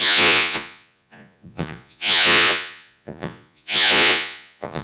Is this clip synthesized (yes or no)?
yes